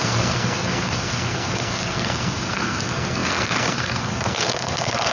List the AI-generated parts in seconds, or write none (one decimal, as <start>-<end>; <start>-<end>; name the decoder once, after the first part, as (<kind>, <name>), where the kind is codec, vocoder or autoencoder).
0.0-5.1 (codec, SNAC)